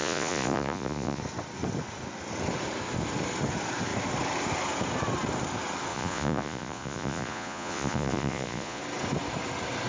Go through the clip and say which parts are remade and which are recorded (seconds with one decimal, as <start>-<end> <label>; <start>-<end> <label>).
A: 0.0-1.2 remade; 1.2-5.9 recorded; 5.9-8.8 remade; 8.8-9.9 recorded